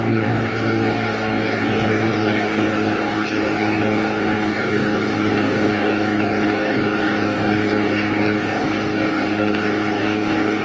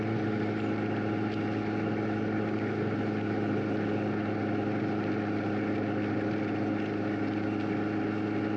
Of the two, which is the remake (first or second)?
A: first